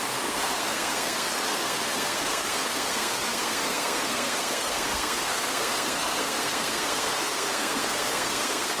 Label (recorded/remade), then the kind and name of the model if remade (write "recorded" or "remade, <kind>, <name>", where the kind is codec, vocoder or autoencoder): remade, codec, SNAC